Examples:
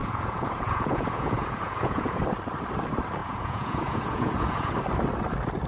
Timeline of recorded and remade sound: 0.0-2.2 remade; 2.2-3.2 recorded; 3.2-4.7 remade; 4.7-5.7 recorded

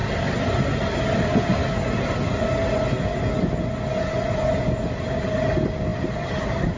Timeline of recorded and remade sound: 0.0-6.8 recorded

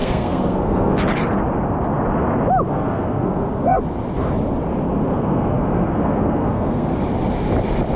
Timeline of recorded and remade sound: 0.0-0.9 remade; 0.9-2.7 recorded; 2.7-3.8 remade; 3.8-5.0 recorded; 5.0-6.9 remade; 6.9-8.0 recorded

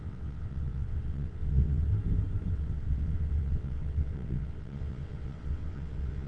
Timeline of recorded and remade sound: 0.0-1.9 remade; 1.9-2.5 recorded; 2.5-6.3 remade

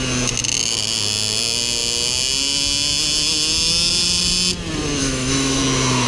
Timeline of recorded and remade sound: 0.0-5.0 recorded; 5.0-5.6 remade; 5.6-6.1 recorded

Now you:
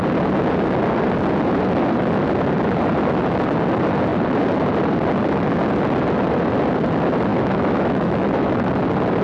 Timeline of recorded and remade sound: 0.0-7.3 recorded; 7.3-8.7 remade; 8.7-9.2 recorded